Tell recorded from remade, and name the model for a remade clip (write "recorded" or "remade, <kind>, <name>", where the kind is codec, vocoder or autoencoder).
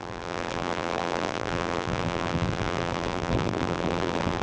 remade, vocoder, BigVGAN v2